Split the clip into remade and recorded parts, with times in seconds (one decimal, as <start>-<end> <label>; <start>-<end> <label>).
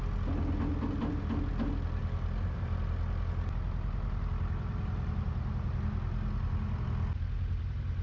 0.0-8.0 recorded